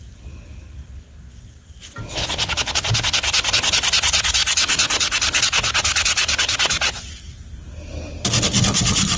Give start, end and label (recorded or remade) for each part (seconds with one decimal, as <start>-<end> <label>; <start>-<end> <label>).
0.0-9.2 recorded